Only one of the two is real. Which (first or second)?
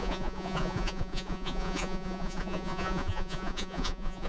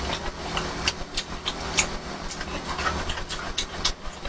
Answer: second